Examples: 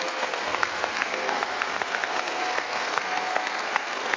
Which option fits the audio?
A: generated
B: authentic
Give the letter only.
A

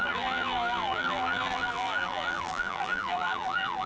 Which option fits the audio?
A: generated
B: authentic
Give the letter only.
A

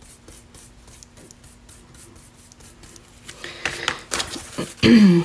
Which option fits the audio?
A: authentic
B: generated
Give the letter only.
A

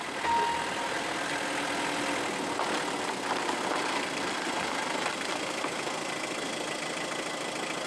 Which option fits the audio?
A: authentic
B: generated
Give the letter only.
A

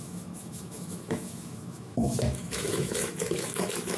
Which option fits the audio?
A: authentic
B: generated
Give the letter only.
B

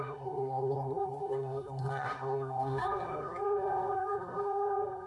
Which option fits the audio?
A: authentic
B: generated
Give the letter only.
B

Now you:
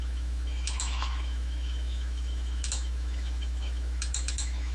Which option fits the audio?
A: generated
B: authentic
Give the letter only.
A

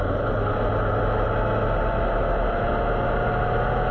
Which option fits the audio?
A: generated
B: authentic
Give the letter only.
B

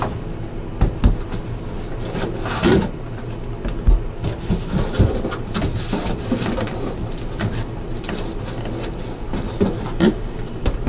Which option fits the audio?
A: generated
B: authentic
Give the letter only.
B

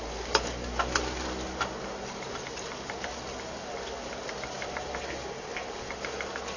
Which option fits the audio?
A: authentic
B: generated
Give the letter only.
A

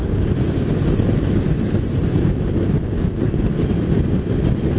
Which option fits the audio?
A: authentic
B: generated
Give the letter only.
A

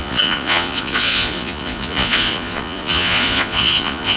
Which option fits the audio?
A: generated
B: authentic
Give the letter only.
A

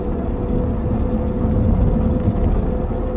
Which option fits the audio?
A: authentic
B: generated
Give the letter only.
A